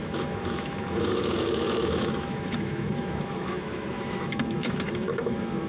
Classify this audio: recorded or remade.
remade